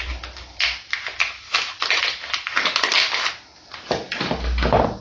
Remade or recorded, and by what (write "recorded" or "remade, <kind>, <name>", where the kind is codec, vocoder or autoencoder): recorded